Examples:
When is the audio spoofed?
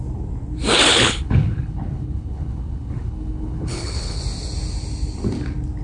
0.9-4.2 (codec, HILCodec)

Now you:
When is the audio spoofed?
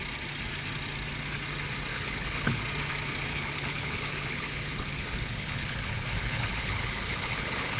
1.9-2.6 (codec, HILCodec); 3.3-7.8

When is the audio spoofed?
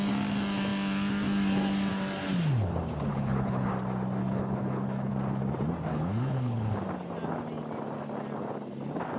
3.1-3.7 (codec, HILCodec); 4.2-5.1; 5.9-6.8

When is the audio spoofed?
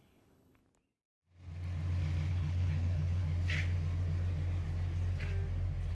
0.0-0.6 (codec, HILCodec); 2.3-3.2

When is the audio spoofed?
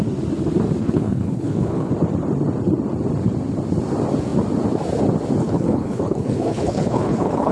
0.8-1.9 (codec, HILCodec); 5.4-7.5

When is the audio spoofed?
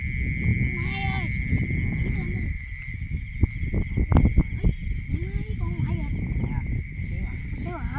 none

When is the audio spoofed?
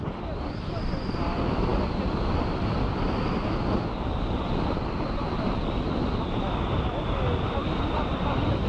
none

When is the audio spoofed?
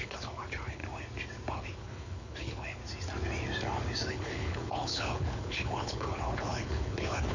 0.0-0.8 (codec, HILCodec); 1.5-2.8; 4.1-7.3